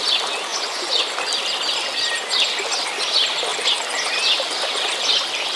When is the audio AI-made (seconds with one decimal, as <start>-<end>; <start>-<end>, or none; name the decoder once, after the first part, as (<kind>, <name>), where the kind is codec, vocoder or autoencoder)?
0.5-1.0 (vocoder, Vocos)